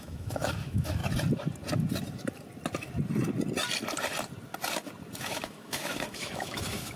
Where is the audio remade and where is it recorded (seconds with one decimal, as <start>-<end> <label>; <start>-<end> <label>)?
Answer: 0.0-1.0 remade; 1.0-5.2 recorded; 5.2-7.0 remade